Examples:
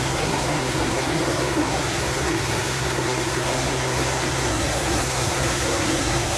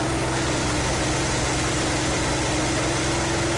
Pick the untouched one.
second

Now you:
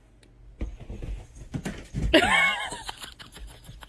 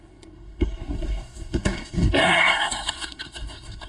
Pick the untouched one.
first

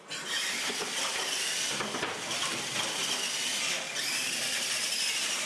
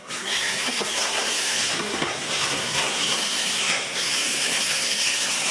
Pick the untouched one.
first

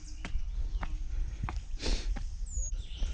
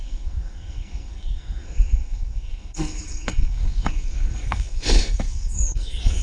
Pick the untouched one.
first